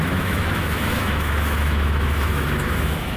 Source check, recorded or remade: remade